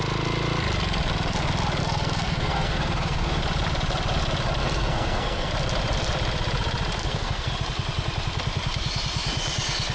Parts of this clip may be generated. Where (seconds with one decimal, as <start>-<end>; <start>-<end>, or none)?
1.8-3.4; 4.6-5.5; 7.0-7.5